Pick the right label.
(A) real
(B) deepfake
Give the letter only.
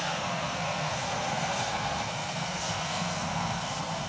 B